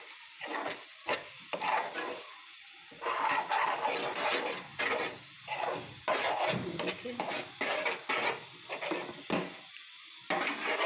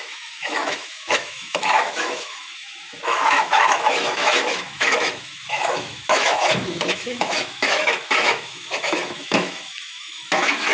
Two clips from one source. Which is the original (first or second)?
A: first